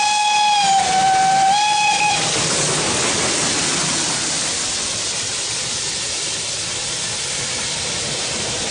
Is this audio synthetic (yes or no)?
no